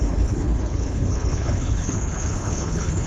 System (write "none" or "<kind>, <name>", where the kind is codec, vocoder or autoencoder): codec, HILCodec